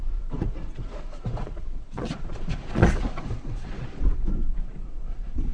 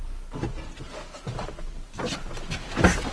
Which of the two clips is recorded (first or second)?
second